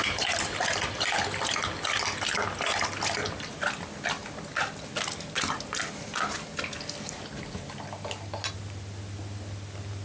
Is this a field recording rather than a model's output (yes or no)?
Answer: yes